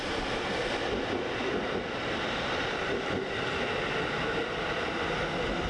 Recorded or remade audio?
recorded